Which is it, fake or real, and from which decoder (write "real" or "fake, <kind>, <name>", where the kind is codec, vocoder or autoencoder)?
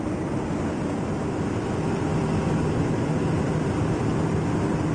real